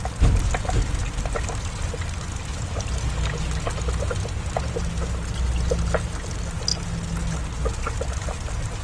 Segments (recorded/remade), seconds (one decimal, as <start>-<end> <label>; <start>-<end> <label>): 0.0-8.8 recorded